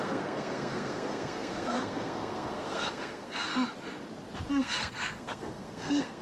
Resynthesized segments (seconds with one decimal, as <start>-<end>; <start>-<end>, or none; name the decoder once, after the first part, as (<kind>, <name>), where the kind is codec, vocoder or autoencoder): 0.0-3.5 (codec, SNAC); 4.5-6.2